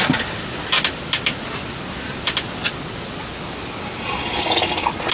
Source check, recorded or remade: recorded